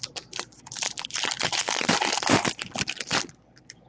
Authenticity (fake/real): real